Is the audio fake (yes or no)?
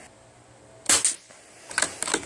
no